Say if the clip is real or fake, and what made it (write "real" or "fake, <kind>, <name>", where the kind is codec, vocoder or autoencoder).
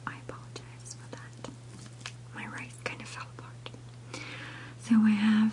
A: real